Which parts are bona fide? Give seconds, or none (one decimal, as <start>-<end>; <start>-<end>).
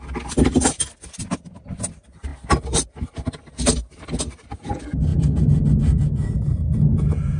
0.0-5.1